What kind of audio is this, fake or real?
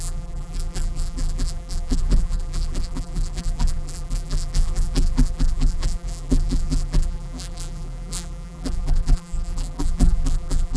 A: fake